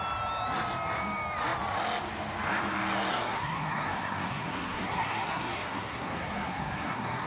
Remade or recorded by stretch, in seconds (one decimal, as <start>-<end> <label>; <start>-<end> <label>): 0.0-3.1 recorded; 3.1-7.3 remade